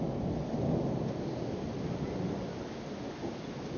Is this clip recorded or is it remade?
recorded